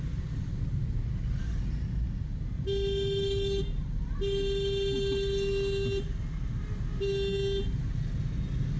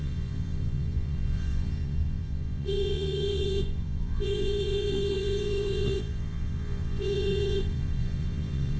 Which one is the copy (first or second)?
second